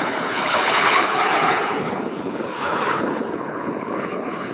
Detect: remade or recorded remade